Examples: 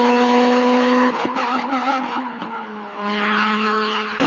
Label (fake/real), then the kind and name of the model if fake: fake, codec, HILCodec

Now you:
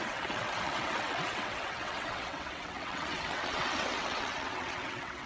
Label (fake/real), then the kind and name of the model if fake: fake, vocoder, WaveNeXt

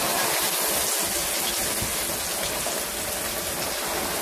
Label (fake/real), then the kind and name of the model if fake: real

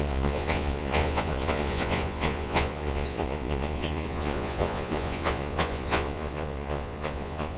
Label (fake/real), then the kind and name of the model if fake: fake, vocoder, Vocos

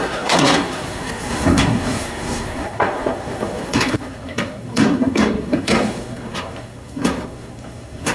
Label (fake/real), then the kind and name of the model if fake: fake, codec, SNAC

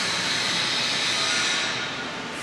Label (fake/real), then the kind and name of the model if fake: real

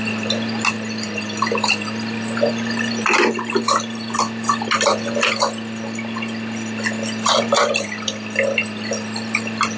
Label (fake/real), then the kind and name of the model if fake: real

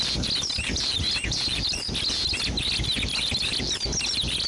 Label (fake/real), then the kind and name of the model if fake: real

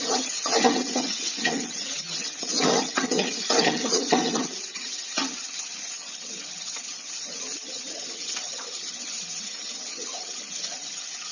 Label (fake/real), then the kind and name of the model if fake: fake, vocoder, HiFi-GAN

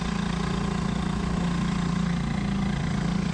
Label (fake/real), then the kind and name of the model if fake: real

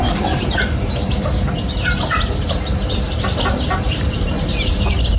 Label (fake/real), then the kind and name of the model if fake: fake, vocoder, BigVGAN v2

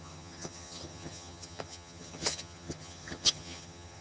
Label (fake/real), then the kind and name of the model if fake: fake, vocoder, HiFi-GAN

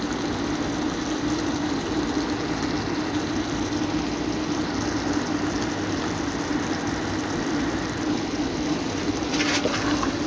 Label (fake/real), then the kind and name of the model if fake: real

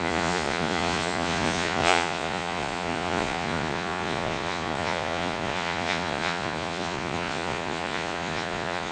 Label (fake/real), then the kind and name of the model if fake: fake, vocoder, Vocos